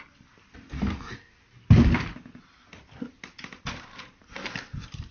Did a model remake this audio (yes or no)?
no